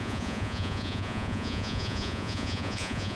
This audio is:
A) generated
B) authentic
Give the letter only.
A